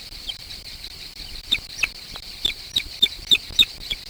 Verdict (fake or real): fake